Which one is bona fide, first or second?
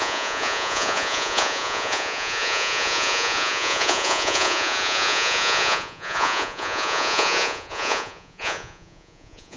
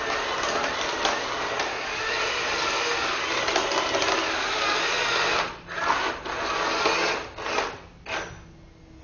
second